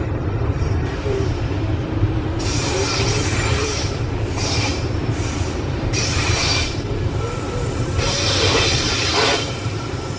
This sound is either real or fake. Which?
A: fake